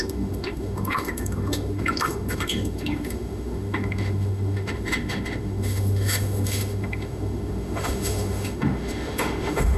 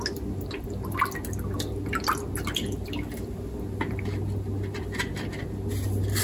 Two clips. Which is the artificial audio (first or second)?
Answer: first